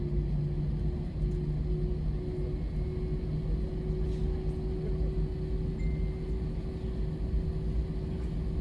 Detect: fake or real real